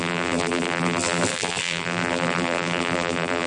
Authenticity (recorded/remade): remade